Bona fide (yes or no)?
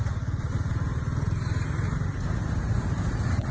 yes